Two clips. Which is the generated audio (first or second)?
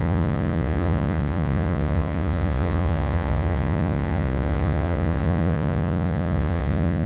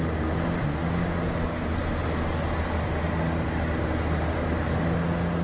first